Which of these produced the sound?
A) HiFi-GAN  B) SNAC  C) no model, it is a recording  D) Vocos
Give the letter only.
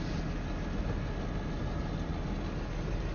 C